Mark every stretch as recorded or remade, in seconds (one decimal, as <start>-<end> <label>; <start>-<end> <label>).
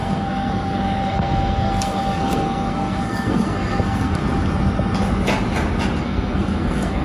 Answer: 0.0-4.2 remade; 4.2-6.0 recorded; 6.0-7.0 remade